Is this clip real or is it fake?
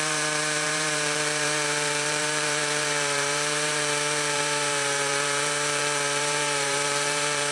fake